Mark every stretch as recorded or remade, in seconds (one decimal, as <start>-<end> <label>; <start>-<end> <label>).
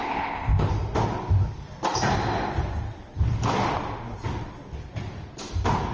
0.0-0.7 remade; 0.7-5.9 recorded